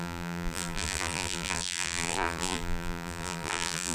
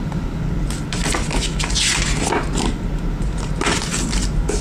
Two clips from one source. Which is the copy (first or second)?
first